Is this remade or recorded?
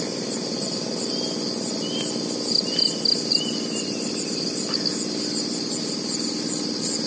recorded